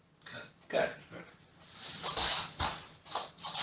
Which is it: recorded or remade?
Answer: recorded